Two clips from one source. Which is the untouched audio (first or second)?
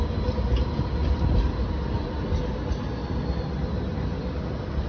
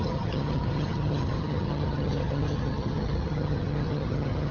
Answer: first